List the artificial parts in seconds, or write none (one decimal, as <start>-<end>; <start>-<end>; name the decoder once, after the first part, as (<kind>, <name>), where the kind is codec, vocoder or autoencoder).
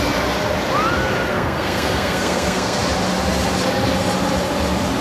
1.3-2.8 (codec, SNAC)